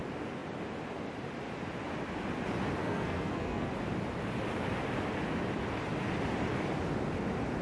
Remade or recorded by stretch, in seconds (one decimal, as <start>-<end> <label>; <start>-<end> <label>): 0.0-2.8 recorded; 2.8-3.7 remade; 3.7-7.6 recorded